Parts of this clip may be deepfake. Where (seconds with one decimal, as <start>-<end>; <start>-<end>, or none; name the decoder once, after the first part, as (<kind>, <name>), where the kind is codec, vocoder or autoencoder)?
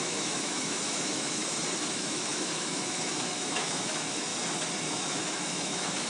0.0-1.4 (autoencoder, DAC-VAE); 1.9-4.3; 5.0-6.1